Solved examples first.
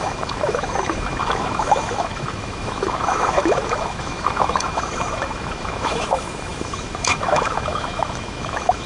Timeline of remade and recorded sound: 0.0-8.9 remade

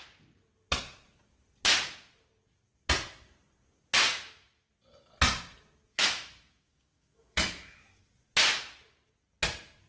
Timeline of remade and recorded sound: 0.0-4.1 recorded; 4.1-4.7 remade; 4.7-5.9 recorded; 5.9-8.0 remade; 8.0-9.9 recorded

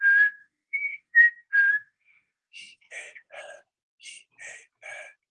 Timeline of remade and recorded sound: 0.0-0.4 recorded; 0.4-1.2 remade; 1.2-1.7 recorded; 1.7-3.3 remade; 3.3-5.3 recorded

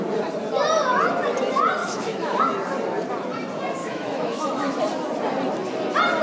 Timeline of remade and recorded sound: 0.0-1.8 recorded; 1.8-2.4 remade; 2.4-3.8 recorded; 3.8-4.8 remade; 4.8-6.2 recorded